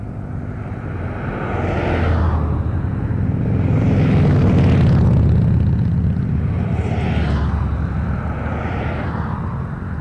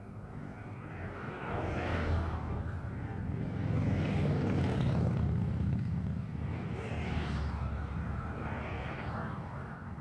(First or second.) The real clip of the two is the first